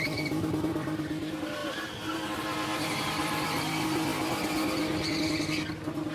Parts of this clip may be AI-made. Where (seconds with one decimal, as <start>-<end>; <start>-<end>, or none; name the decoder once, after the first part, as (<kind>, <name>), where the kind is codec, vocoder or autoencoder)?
0.0-1.6 (vocoder, BigVGAN v2); 2.4-4.1